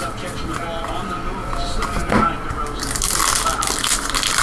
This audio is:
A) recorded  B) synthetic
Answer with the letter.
A